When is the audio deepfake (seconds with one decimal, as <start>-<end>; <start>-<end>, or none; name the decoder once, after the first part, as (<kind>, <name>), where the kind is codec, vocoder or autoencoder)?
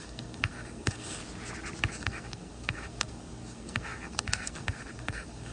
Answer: 0.0-1.2 (codec, SNAC); 1.9-5.5